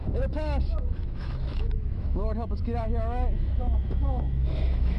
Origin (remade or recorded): remade